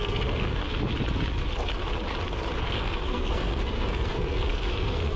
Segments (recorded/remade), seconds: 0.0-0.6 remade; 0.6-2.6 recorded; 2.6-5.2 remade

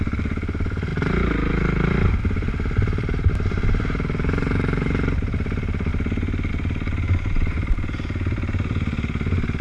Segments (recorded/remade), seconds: 0.0-5.9 remade; 5.9-6.5 recorded; 6.5-9.6 remade

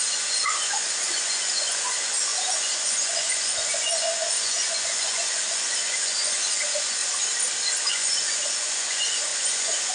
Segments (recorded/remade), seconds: 0.0-7.0 remade; 7.0-7.9 recorded; 7.9-9.9 remade